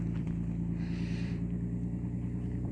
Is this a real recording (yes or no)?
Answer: no